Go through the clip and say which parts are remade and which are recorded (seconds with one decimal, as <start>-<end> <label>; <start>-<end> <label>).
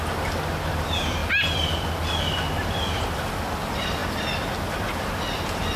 0.0-5.8 recorded